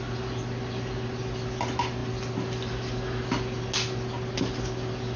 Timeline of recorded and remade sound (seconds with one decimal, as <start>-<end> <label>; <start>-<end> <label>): 0.0-5.2 recorded